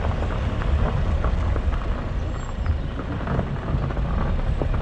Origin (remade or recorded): recorded